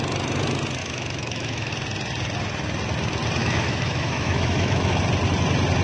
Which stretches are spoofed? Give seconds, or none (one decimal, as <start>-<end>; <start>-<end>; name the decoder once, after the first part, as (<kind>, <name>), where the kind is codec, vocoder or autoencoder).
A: 0.8-1.7 (autoencoder, DAC-VAE); 3.4-5.0